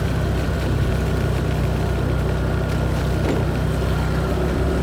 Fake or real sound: real